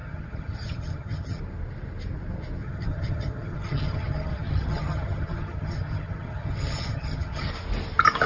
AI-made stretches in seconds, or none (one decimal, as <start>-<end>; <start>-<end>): 0.0-1.4; 2.6-7.5